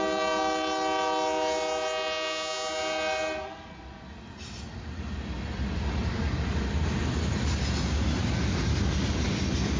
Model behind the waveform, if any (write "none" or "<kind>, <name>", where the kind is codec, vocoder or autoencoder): none